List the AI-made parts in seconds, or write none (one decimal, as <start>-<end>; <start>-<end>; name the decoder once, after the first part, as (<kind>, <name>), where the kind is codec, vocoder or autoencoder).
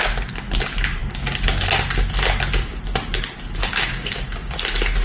3.6-4.6 (codec, DAC)